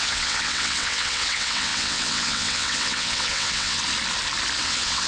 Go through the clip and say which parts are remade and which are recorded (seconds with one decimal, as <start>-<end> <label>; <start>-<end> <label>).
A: 0.0-3.8 remade; 3.8-4.6 recorded; 4.6-5.1 remade